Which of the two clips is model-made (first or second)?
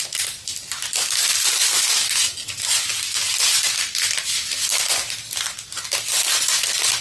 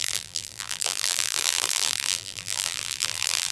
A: second